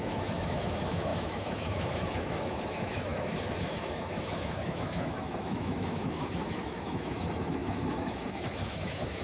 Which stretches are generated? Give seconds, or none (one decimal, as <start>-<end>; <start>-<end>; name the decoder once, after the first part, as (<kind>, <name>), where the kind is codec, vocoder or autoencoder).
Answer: 0.0-9.2 (autoencoder, DAC-VAE)